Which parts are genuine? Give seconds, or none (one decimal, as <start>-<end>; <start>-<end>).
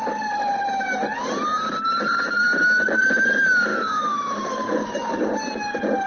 0.0-3.7; 4.9-6.1